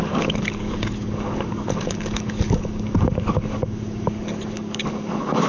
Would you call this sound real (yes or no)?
no